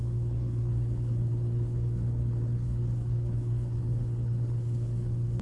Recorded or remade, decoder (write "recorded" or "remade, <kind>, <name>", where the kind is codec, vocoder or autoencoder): remade, codec, HILCodec